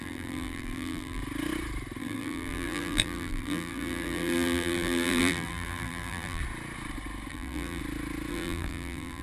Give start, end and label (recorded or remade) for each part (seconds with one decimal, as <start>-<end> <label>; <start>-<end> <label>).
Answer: 0.0-1.2 remade; 1.2-2.0 recorded; 2.0-6.4 remade; 6.4-7.3 recorded; 7.3-7.8 remade; 7.8-8.3 recorded; 8.3-9.2 remade